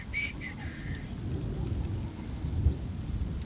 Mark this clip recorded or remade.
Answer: recorded